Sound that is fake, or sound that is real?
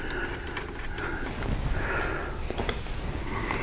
real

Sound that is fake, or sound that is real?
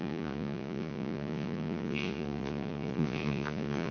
fake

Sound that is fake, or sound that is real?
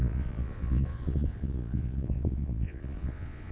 fake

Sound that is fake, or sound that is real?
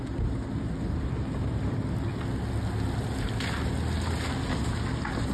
real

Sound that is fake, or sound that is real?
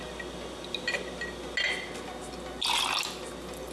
real